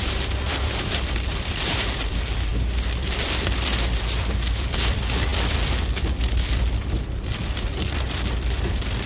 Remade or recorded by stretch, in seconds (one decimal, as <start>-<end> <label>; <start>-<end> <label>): 0.0-9.1 remade